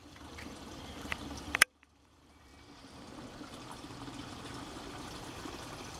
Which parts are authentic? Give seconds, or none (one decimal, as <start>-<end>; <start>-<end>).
2.5-5.0